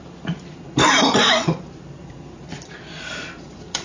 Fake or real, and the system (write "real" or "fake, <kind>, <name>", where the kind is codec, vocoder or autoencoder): fake, vocoder, BigVGAN v2